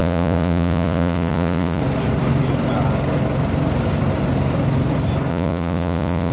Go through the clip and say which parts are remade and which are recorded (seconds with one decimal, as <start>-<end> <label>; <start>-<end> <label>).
0.0-1.8 remade; 1.8-5.3 recorded; 5.3-6.3 remade